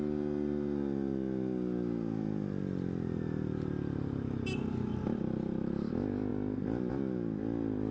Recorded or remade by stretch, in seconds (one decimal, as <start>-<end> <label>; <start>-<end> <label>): 0.0-7.9 recorded